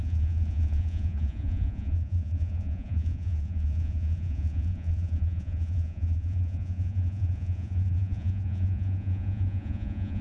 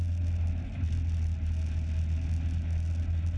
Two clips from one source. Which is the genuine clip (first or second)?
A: second